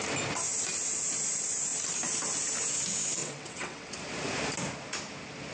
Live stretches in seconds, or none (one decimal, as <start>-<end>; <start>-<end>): 0.0-3.2; 3.9-5.5